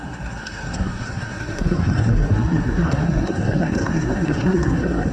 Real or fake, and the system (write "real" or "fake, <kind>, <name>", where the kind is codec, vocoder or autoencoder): fake, codec, SNAC